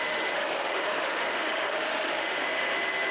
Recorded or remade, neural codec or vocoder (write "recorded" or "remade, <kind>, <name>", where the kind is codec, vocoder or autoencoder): remade, autoencoder, DAC-VAE